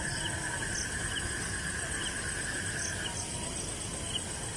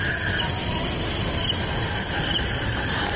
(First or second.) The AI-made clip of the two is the second